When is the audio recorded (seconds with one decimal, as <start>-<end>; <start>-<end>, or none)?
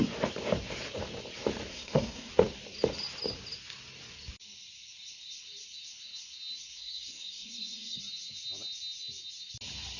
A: 0.0-1.7; 2.3-6.7; 8.0-10.0